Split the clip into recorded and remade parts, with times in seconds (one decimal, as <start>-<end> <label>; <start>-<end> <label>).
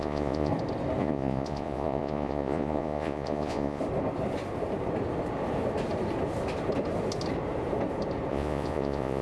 0.0-0.5 remade; 0.5-1.0 recorded; 1.0-3.8 remade; 3.8-8.3 recorded; 8.3-9.2 remade